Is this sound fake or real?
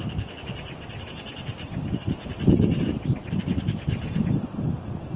real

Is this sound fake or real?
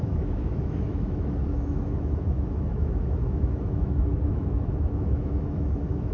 fake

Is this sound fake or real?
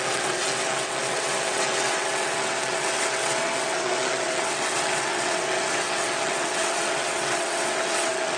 fake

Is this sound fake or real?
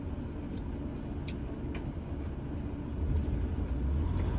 real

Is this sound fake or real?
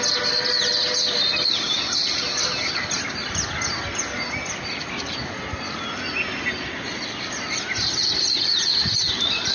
real